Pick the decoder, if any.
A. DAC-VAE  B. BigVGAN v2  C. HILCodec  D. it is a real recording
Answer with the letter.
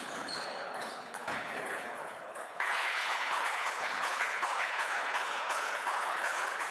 C